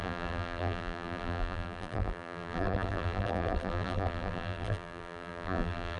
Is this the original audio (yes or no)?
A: no